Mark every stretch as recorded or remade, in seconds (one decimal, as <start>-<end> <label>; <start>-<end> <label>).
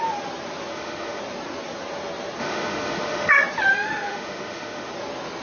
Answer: 0.0-0.7 recorded; 0.7-1.2 remade; 1.2-2.4 recorded; 2.4-3.3 remade; 3.3-3.7 recorded; 3.7-4.9 remade; 4.9-5.4 recorded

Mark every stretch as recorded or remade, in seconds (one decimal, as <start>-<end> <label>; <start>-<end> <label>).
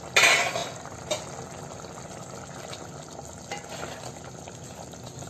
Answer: 0.0-5.3 recorded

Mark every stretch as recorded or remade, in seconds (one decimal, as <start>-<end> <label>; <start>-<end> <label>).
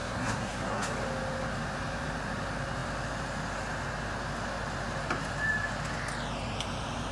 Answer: 0.0-0.9 remade; 0.9-7.1 recorded